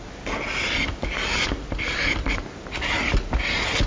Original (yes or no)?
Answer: yes